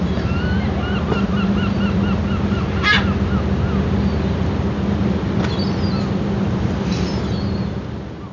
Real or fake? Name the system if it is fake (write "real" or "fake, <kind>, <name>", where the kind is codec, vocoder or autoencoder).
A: real